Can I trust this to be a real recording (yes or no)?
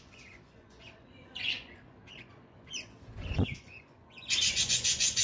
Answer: no